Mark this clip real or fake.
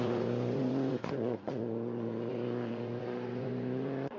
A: fake